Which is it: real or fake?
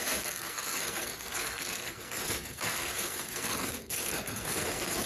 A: fake